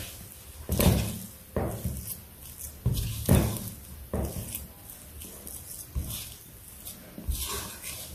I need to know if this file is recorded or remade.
recorded